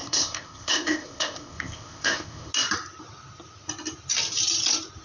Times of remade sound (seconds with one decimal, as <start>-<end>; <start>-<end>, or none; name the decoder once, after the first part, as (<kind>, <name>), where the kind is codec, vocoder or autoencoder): 0.0-2.5 (codec, ZipCodec)